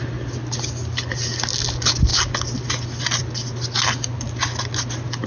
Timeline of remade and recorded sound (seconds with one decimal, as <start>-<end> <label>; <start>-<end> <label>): 0.0-5.3 recorded